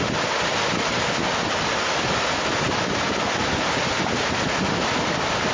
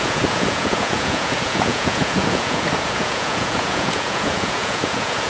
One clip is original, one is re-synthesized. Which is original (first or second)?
first